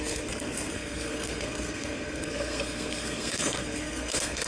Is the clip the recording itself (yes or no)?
no